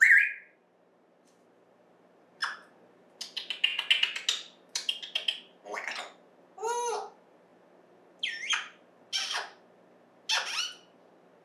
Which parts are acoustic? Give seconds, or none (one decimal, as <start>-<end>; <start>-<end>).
0.0-11.4